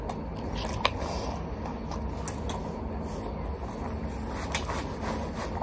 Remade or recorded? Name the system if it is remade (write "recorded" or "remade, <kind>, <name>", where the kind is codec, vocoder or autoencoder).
recorded